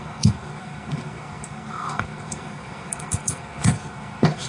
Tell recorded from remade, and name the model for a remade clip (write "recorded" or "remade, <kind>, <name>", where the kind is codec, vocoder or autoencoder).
remade, codec, SNAC